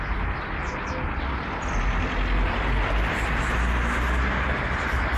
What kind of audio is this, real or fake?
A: real